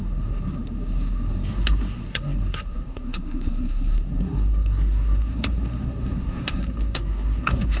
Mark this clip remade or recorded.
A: remade